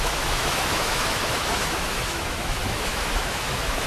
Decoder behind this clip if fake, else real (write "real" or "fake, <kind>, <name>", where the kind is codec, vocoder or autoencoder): fake, autoencoder, DAC-VAE